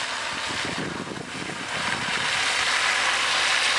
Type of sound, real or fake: real